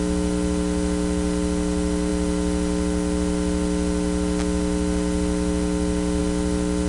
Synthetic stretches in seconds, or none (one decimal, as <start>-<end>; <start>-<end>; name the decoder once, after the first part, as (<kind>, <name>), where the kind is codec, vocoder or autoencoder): none